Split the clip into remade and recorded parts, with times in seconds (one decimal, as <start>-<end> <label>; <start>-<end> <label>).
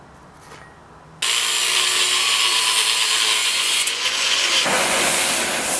0.0-3.4 recorded; 3.4-5.3 remade; 5.3-5.8 recorded